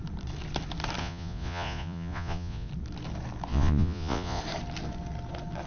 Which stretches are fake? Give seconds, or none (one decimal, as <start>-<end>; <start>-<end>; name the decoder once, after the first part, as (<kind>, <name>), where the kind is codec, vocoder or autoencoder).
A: 1.0-2.7 (vocoder, Vocos); 3.5-4.4